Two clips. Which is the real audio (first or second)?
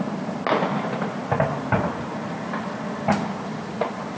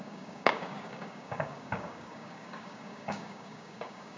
first